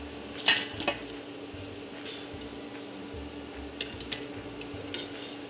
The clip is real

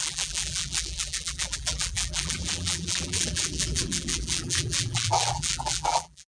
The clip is fake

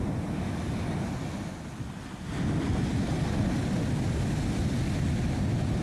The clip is real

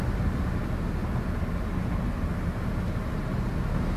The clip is real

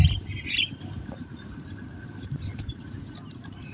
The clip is fake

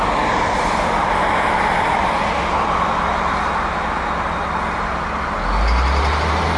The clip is real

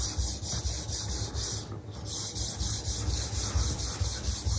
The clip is real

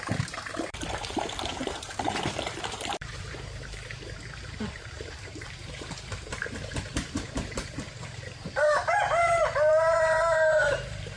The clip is fake